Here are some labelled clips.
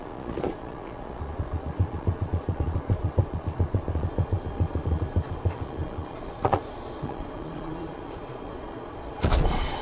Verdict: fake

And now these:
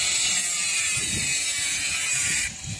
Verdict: fake